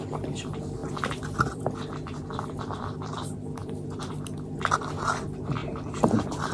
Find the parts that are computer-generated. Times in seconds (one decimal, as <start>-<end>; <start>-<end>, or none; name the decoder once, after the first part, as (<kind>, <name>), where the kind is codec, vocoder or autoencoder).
0.8-3.2 (vocoder, BigVGAN v2); 5.6-6.5